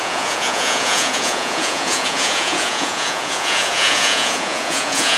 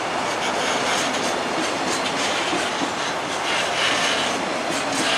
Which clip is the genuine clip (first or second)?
second